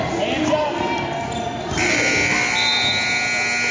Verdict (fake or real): real